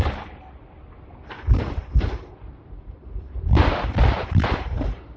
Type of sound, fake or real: fake